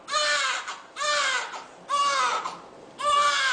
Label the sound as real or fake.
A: real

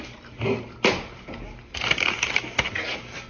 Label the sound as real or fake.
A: real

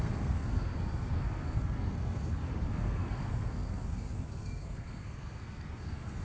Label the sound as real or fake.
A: fake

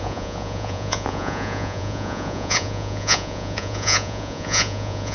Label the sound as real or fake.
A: fake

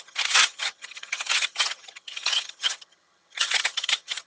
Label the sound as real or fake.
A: fake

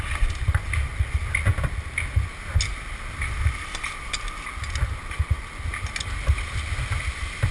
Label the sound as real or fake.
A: real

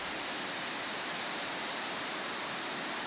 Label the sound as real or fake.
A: fake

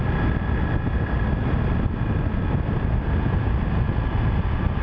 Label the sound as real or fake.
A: real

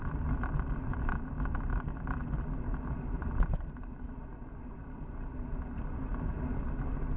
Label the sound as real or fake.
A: real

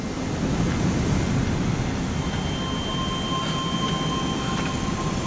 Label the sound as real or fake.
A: real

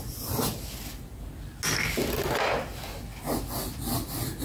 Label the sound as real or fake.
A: real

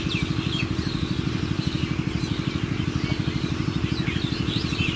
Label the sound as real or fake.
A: real